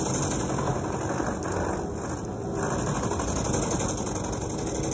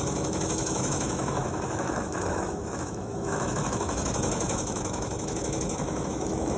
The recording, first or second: first